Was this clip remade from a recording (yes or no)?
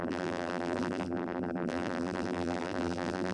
yes